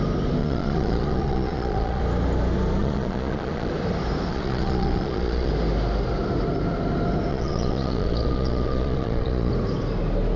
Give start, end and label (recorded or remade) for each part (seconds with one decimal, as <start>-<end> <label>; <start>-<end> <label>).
0.0-0.4 recorded; 0.4-2.0 remade; 2.0-2.8 recorded; 2.8-3.7 remade; 3.7-4.3 recorded; 4.3-5.5 remade; 5.5-7.3 recorded; 7.3-9.5 remade; 9.5-10.4 recorded